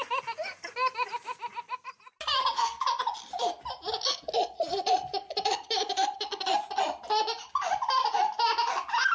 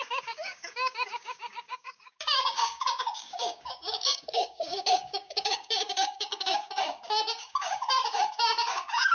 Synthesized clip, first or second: second